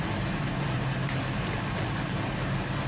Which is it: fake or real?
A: fake